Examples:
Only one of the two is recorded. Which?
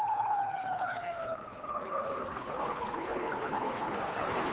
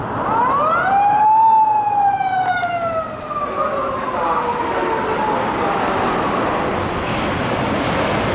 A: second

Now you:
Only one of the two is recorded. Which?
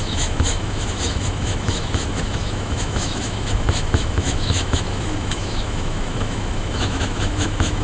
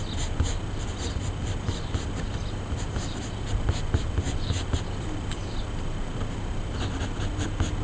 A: second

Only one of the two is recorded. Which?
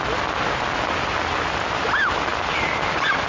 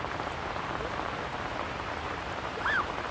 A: first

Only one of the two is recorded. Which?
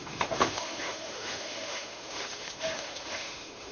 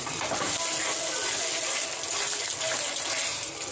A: second